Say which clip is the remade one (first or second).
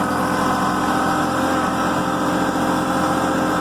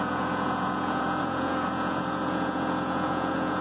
second